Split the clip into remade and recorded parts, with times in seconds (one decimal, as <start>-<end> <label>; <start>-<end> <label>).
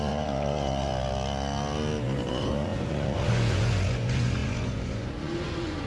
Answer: 0.0-0.9 remade; 0.9-2.3 recorded; 2.3-5.9 remade